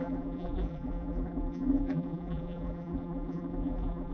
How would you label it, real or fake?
fake